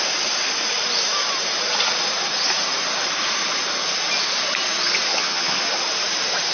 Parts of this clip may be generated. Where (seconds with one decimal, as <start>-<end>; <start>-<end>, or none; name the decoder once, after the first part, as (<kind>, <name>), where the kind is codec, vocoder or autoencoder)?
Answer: 5.1-5.6 (vocoder, HiFi-GAN)